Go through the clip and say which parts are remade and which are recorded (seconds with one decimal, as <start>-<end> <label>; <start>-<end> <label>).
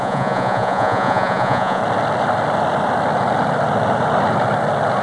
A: 0.0-1.8 remade; 1.8-5.0 recorded